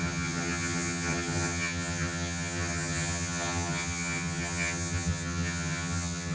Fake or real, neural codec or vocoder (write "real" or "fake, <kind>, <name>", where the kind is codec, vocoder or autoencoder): fake, vocoder, HiFi-GAN